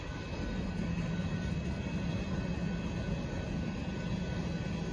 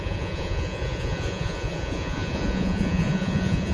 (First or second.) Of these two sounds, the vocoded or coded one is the second